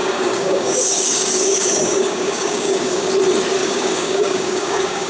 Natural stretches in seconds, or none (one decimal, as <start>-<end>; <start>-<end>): 3.1-3.6